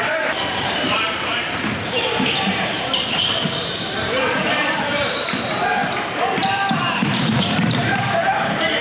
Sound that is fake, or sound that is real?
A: fake